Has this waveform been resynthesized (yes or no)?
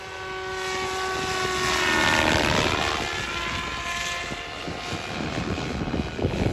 no